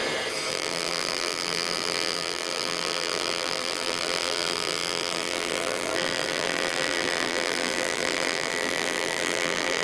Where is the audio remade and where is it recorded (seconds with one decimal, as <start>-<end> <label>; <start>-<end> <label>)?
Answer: 0.0-0.5 recorded; 0.5-9.8 remade

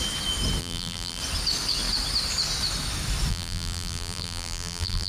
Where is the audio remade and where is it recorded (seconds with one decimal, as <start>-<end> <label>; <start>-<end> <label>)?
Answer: 0.0-0.6 recorded; 0.6-1.2 remade; 1.2-3.3 recorded; 3.3-5.1 remade

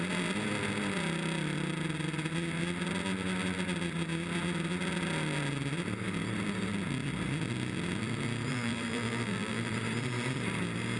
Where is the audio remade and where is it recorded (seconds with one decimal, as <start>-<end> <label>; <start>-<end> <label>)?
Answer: 0.0-8.5 recorded; 8.5-9.7 remade; 9.7-11.0 recorded

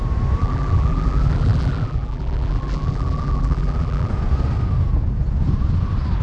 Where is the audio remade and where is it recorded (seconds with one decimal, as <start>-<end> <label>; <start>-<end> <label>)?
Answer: 0.0-0.4 recorded; 0.4-4.1 remade; 4.1-6.2 recorded

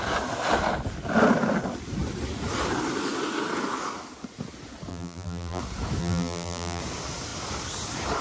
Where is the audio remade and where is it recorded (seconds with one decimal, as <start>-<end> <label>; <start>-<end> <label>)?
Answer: 0.0-4.9 recorded; 4.9-5.6 remade; 5.6-6.0 recorded; 6.0-6.8 remade; 6.8-8.2 recorded

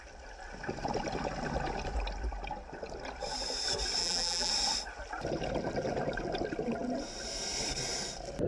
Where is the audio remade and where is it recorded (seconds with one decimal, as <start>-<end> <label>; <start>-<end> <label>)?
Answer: 0.0-4.0 recorded; 4.0-4.5 remade; 4.5-8.5 recorded